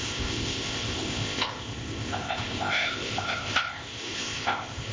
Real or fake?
fake